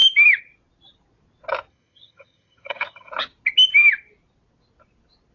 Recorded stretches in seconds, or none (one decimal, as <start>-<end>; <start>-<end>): 0.0-1.7; 3.1-5.3